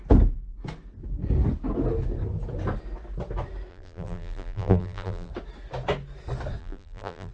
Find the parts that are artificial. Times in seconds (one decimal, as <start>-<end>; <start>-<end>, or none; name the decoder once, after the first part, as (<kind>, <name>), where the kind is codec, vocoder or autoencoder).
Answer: 3.7-5.3 (vocoder, BigVGAN v2); 6.6-7.3